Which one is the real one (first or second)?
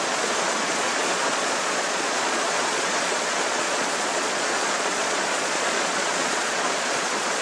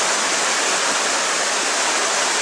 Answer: second